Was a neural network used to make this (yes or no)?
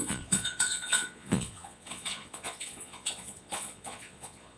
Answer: yes